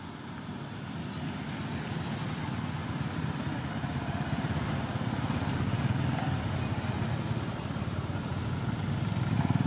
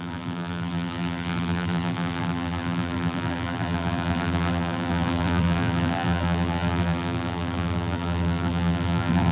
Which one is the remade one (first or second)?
second